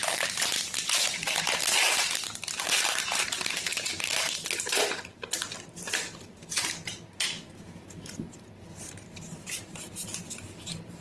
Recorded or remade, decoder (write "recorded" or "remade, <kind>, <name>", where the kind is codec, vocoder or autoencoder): remade, vocoder, BigVGAN v2